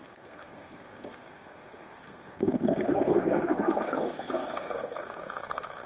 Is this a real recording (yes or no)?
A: no